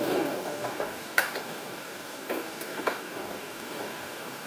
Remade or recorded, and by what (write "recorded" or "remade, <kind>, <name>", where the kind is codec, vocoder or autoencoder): remade, codec, DAC